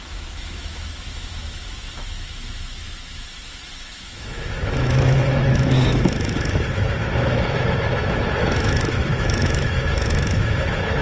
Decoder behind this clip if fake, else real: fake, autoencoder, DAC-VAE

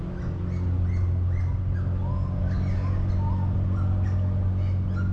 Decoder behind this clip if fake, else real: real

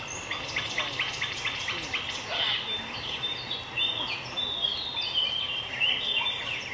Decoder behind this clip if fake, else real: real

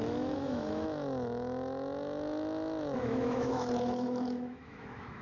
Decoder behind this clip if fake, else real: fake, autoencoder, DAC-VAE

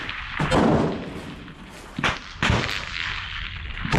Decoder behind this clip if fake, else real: real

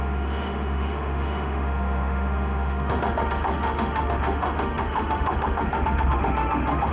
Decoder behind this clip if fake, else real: fake, autoencoder, DAC-VAE